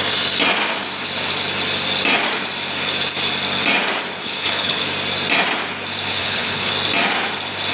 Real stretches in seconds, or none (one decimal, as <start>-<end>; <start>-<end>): 0.0-4.2; 4.8-6.2; 6.7-7.7